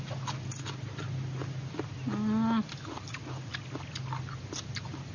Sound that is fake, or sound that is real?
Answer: real